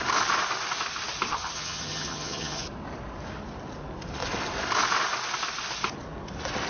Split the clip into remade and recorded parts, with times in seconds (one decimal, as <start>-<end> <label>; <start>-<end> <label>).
0.0-1.3 recorded; 1.3-2.6 remade; 2.6-6.7 recorded